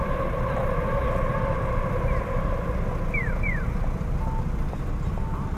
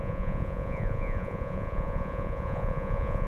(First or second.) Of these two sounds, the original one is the first